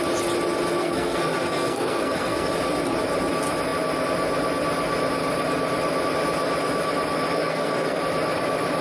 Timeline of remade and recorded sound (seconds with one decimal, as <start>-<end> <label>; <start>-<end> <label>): 0.0-0.8 recorded; 0.8-2.5 remade; 2.5-7.4 recorded; 7.4-8.0 remade; 8.0-8.8 recorded